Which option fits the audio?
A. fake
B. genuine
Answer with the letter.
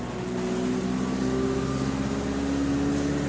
B